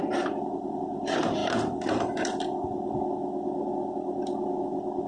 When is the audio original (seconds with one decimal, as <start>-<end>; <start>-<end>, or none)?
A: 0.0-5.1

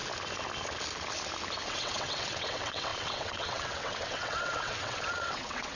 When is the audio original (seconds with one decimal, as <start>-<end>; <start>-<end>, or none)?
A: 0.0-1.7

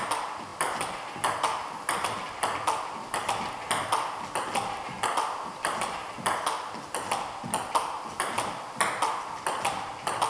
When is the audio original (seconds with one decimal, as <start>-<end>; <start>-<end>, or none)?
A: 0.0-10.3

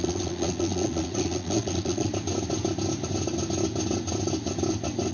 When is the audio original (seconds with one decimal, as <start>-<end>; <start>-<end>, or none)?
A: 2.1-5.1